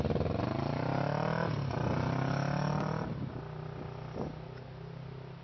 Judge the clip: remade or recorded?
recorded